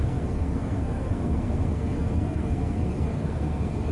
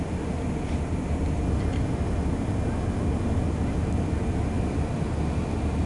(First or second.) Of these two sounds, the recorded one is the second